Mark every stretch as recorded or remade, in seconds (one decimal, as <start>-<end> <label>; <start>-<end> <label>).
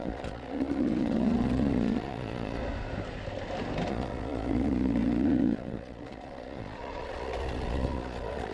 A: 0.0-2.6 remade; 2.6-3.9 recorded; 3.9-8.5 remade